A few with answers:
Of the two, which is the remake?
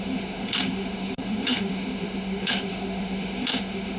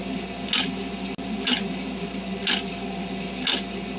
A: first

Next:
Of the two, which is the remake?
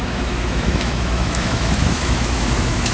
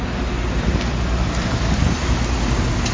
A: first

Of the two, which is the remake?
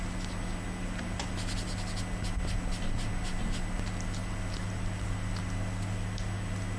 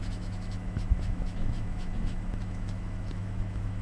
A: second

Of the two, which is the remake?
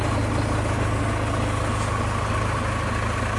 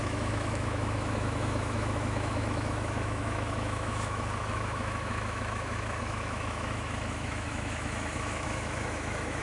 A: second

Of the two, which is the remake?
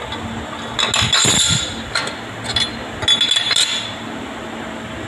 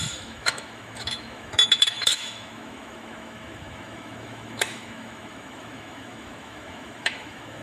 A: second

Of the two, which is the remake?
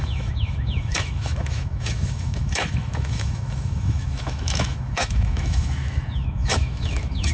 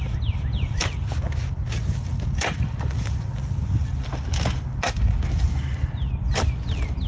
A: first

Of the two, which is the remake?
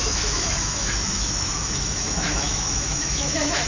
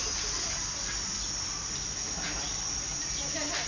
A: first